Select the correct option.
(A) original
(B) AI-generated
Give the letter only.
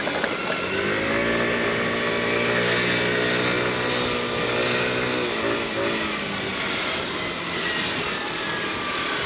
A